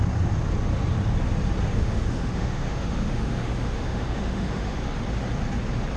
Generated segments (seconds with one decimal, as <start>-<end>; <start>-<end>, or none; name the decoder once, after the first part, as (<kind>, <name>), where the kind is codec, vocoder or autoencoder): 1.6-4.9 (autoencoder, DAC-VAE)